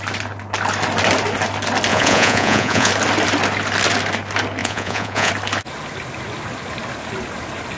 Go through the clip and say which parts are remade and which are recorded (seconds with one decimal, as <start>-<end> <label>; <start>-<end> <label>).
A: 0.0-1.9 recorded; 1.9-2.9 remade; 2.9-4.6 recorded; 4.6-5.3 remade; 5.3-7.8 recorded